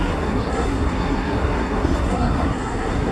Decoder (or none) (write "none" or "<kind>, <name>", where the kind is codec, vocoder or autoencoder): codec, SNAC